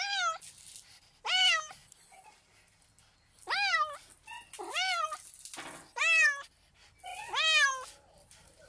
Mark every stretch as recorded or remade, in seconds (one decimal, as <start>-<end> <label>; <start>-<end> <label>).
0.0-8.7 recorded